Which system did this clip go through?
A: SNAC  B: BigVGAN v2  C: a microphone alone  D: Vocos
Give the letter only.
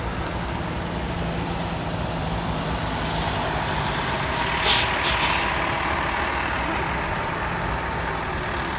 C